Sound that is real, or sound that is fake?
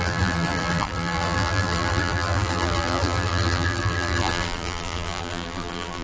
fake